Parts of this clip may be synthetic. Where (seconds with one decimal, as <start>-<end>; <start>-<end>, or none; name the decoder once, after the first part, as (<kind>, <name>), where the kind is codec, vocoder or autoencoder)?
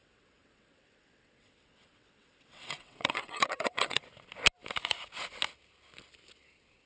0.0-4.0 (vocoder, WaveNeXt)